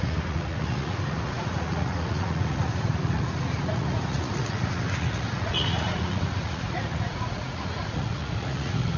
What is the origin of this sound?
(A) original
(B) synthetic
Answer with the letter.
B